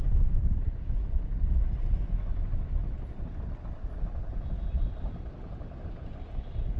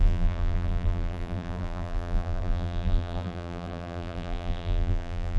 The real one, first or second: first